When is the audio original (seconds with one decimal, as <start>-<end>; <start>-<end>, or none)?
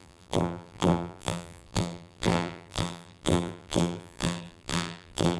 none